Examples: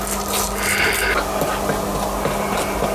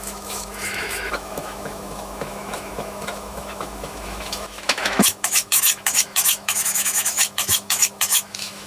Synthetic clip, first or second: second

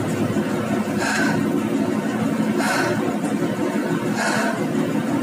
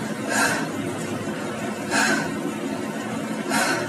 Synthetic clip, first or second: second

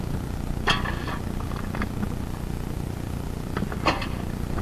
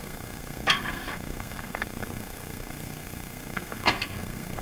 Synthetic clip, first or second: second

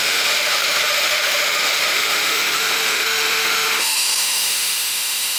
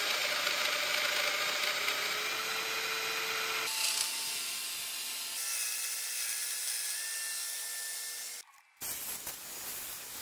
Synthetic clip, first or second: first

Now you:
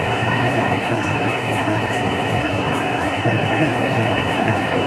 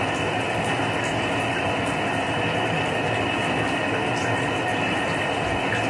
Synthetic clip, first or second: first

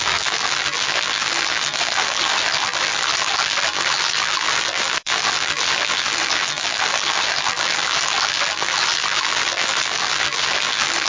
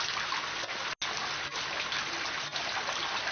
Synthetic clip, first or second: first